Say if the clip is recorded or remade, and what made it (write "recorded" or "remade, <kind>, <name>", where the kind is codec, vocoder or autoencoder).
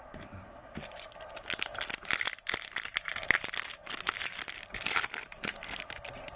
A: recorded